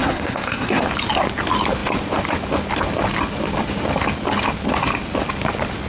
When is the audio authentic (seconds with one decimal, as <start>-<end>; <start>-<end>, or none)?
0.8-5.9